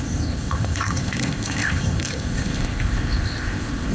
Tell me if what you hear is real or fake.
fake